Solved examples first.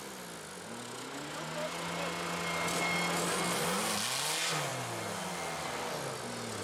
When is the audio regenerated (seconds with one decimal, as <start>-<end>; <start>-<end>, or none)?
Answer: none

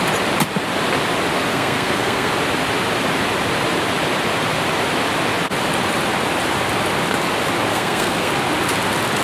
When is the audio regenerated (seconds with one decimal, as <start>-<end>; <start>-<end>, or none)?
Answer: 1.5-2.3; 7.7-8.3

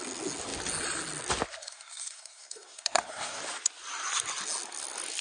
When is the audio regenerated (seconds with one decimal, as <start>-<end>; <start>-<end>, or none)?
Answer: 1.6-3.4

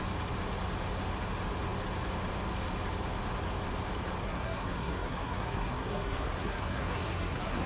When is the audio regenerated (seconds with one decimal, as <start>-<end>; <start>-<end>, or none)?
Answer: 4.2-7.7